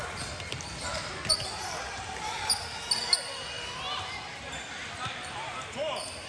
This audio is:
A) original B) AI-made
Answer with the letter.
A